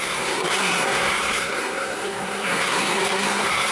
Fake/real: fake